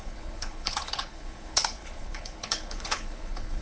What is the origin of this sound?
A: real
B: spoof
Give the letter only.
B